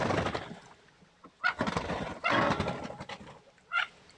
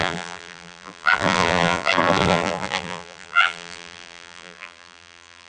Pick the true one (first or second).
first